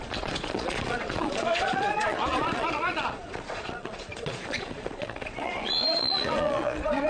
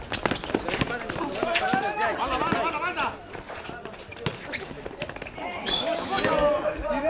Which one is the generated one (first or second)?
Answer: first